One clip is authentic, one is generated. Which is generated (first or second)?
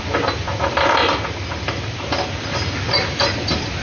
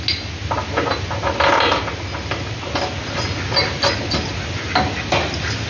first